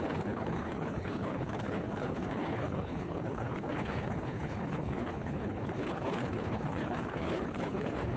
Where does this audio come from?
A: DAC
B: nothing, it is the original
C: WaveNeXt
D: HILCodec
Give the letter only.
D